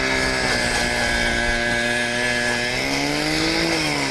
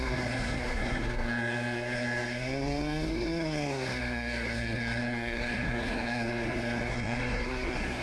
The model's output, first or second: second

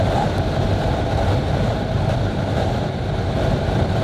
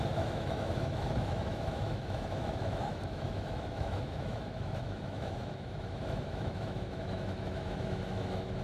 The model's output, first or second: second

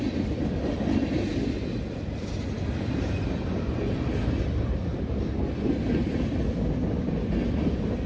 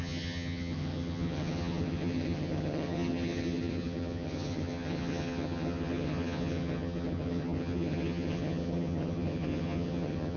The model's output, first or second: second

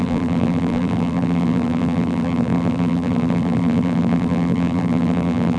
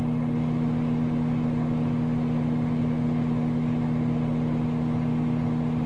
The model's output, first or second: first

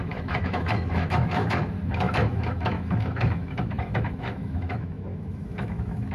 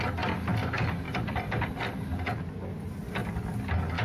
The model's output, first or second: first